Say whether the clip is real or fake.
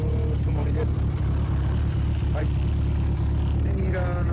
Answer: real